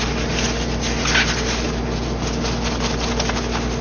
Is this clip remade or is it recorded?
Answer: recorded